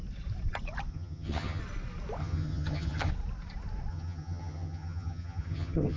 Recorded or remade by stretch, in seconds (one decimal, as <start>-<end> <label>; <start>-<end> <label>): 0.0-0.9 recorded; 0.9-1.6 remade; 1.6-2.2 recorded; 2.2-3.1 remade; 3.1-3.9 recorded; 3.9-6.0 remade